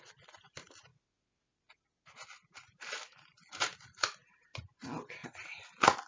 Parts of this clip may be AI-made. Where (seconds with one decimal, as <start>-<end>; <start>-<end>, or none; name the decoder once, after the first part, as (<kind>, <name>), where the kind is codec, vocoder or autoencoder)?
none